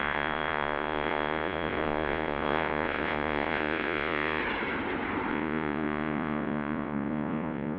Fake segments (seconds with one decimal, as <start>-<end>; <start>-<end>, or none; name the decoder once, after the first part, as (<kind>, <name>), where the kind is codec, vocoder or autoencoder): 0.0-4.4 (vocoder, Vocos); 5.3-7.8